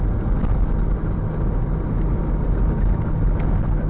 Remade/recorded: recorded